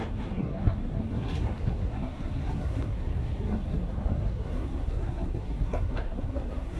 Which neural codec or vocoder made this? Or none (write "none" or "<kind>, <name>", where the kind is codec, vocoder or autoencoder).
codec, SNAC